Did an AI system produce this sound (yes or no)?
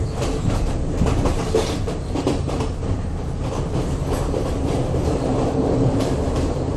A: yes